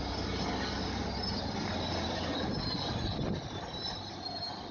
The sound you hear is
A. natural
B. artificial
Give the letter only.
A